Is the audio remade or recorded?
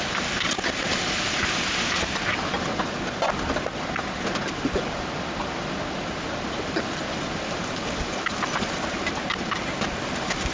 recorded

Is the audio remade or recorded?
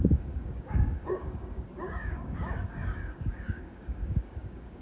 remade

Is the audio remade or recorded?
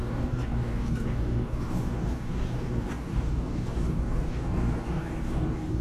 remade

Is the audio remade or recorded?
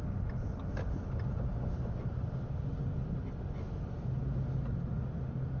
recorded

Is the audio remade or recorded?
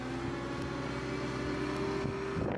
recorded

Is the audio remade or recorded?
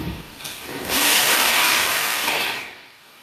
remade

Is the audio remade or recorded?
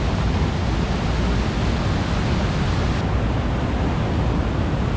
recorded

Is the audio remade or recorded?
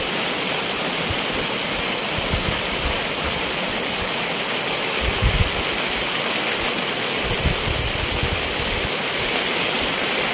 recorded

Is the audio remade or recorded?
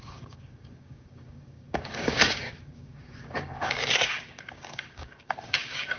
remade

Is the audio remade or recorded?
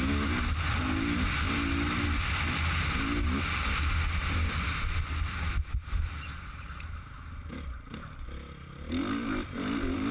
recorded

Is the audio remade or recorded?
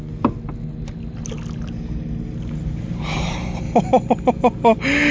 recorded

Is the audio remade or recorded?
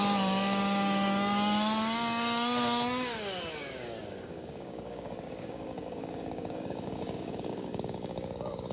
remade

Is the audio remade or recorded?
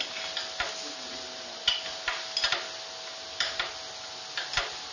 recorded